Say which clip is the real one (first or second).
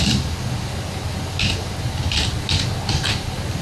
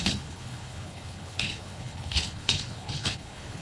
first